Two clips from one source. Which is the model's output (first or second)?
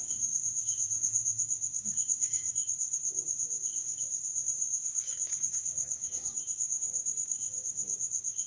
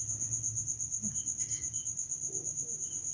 first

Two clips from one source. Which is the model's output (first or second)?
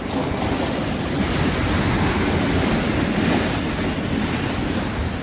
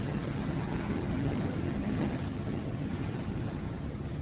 second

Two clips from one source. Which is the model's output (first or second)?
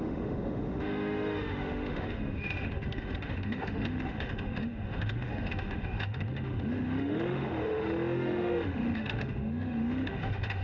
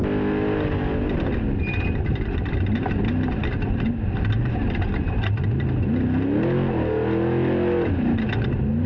first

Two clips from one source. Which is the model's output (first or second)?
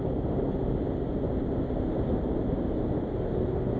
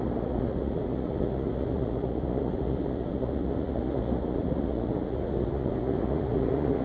second